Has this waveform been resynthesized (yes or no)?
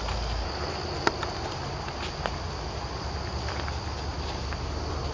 no